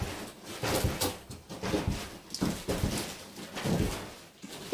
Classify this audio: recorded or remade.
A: recorded